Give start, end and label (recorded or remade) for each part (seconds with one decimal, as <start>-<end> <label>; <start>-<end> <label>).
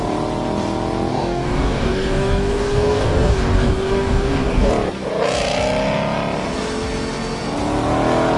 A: 0.0-1.1 recorded; 1.1-4.7 remade; 4.7-8.4 recorded